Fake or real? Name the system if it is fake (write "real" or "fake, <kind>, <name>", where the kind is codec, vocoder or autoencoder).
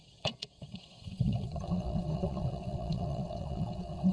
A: fake, vocoder, WaveNeXt